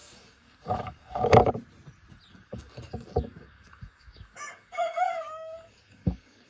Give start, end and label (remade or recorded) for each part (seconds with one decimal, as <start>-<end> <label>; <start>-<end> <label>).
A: 0.0-1.5 remade; 1.5-2.3 recorded; 2.3-6.5 remade